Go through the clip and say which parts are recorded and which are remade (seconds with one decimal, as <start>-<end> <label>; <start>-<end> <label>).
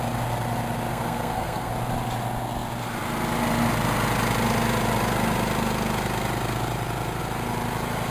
0.0-0.9 recorded; 0.9-1.7 remade; 1.7-8.1 recorded